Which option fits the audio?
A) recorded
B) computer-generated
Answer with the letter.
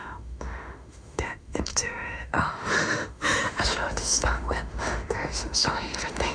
B